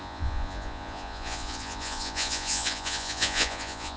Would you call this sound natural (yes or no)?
no